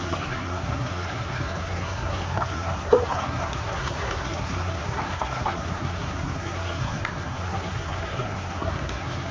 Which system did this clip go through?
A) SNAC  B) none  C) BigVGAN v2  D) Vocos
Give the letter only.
A